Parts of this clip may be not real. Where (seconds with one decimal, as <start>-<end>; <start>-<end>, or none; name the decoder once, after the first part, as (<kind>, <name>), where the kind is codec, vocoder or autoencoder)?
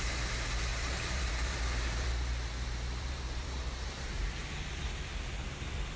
0.7-4.3 (vocoder, BigVGAN v2)